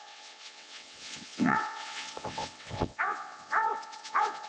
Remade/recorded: remade